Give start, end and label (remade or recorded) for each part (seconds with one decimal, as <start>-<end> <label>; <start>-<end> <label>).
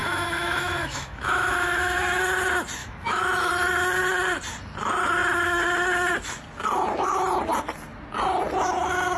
0.0-2.2 remade; 2.2-2.8 recorded; 2.8-3.5 remade; 3.5-9.2 recorded